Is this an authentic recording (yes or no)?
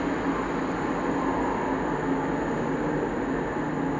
yes